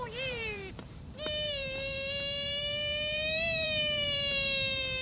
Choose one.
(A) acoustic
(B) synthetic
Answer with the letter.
B